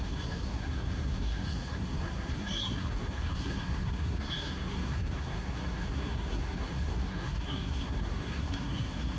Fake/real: fake